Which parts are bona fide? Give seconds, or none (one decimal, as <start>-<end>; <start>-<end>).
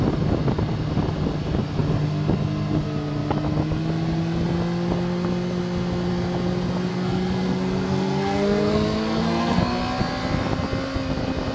0.0-6.9; 9.6-11.5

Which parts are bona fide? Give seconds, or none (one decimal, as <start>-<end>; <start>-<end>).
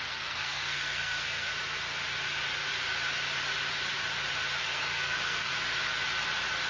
1.5-4.6; 5.5-6.7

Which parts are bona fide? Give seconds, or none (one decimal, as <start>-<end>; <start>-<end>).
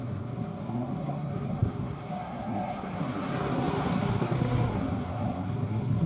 none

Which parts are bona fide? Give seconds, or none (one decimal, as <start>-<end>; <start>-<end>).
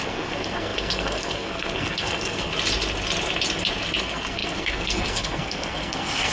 2.5-4.0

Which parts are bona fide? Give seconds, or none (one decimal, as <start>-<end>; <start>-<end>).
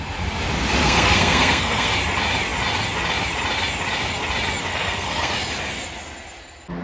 0.0-0.8; 1.9-4.7; 5.3-6.8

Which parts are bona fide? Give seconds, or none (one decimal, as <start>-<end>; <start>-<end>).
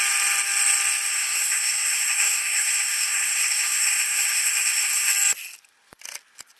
0.0-1.1; 5.1-6.6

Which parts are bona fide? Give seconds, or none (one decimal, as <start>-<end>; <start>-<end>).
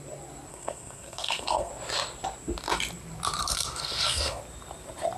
0.0-0.5; 1.7-3.4; 4.4-5.2